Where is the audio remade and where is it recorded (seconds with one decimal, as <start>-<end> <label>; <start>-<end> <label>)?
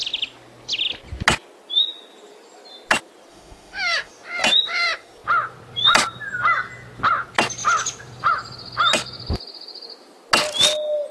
0.0-3.3 recorded; 3.3-4.1 remade; 4.1-11.1 recorded